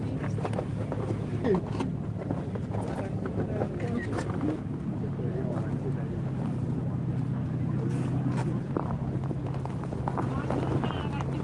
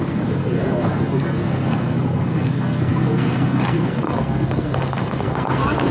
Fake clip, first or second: second